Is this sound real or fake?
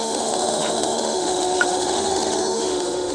fake